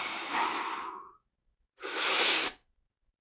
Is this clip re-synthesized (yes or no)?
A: yes